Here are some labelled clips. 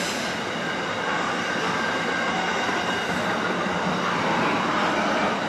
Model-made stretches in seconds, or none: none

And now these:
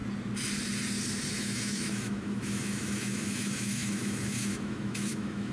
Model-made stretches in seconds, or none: 1.3-5.5

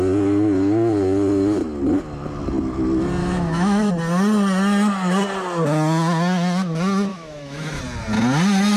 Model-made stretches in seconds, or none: 3.2-3.9; 7.1-7.8

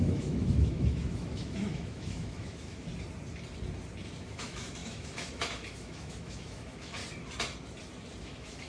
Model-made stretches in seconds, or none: 0.0-2.9; 4.2-7.0; 8.2-8.7